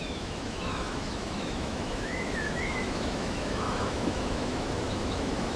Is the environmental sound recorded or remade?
remade